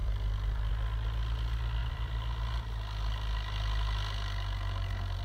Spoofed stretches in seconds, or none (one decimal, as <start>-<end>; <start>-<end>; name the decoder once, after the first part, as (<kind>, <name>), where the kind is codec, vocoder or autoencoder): 0.0-0.7 (vocoder, BigVGAN v2); 1.8-5.2